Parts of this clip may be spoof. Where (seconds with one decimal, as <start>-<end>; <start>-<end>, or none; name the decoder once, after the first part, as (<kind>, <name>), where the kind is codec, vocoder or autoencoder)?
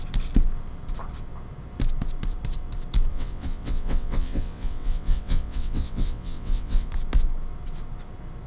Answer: 3.1-6.9 (vocoder, WaveNeXt)